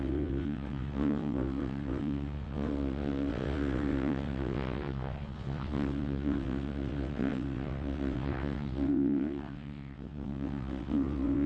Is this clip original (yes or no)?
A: no